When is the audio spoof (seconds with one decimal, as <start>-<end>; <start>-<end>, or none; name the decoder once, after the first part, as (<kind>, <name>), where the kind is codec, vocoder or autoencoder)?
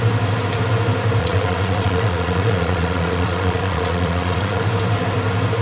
1.2-4.6 (vocoder, Vocos)